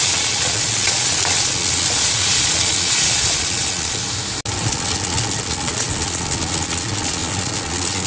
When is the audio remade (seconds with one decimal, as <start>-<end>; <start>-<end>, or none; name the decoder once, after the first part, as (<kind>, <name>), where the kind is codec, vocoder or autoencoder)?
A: 0.0-4.0 (vocoder, Vocos); 4.6-8.1